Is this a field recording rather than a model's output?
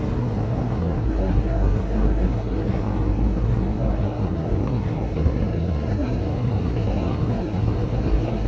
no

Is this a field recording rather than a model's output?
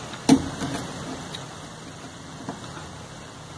yes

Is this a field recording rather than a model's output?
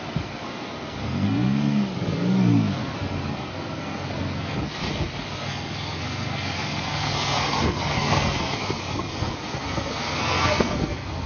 no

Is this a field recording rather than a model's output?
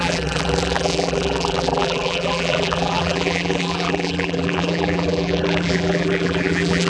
no